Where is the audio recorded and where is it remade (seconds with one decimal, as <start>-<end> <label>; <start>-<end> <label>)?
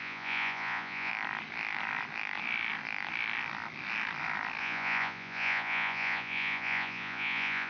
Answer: 0.0-1.1 remade; 1.1-4.6 recorded; 4.6-7.7 remade